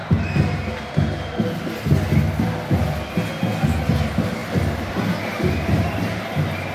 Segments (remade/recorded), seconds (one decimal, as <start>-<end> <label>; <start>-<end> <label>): 0.0-0.8 remade; 0.8-6.7 recorded